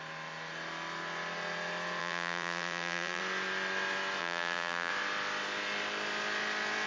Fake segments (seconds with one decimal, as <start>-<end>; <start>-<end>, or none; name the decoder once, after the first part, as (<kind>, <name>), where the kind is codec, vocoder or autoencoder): 2.0-3.2 (vocoder, BigVGAN v2); 4.2-4.9